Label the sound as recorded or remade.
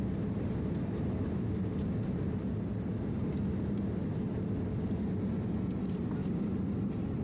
recorded